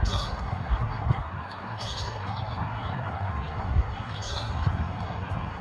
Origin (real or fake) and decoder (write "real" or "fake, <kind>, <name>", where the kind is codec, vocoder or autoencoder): fake, codec, SNAC